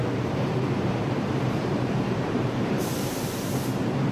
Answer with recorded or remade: remade